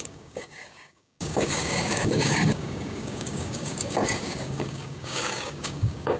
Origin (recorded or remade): remade